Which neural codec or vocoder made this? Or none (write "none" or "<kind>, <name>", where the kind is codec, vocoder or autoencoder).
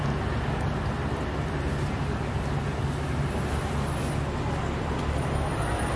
none